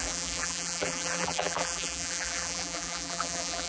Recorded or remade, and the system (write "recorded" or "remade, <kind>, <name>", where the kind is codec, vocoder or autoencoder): remade, vocoder, BigVGAN v2